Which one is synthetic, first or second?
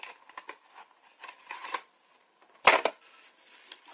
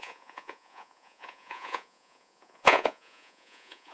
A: second